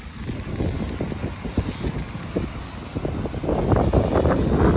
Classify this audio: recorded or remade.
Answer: recorded